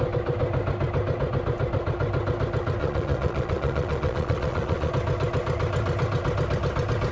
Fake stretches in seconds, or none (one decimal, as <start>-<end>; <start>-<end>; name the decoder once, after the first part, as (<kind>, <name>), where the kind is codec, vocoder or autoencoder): 2.8-4.9 (vocoder, Vocos)